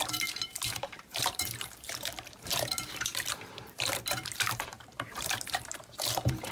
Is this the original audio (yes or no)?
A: no